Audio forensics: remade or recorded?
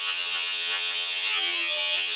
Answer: remade